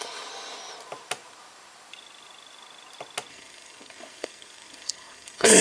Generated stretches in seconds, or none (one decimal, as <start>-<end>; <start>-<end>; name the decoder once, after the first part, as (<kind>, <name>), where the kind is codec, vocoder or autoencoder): 3.3-5.6 (codec, SNAC)